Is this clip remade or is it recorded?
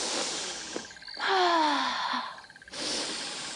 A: recorded